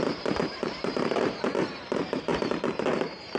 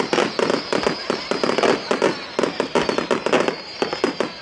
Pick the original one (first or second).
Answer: second